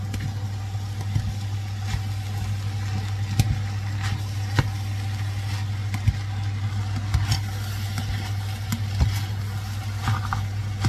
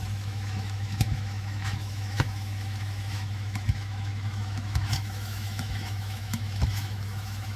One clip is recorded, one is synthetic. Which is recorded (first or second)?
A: first